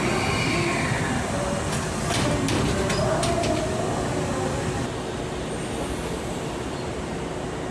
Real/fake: real